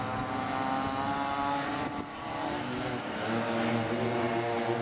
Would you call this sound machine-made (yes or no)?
no